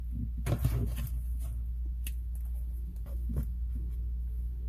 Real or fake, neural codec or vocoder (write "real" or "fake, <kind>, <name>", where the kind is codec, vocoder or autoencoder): real